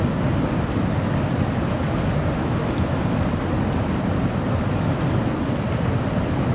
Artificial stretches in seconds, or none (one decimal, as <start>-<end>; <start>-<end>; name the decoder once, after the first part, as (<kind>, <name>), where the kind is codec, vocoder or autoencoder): 2.4-3.0 (autoencoder, DAC-VAE)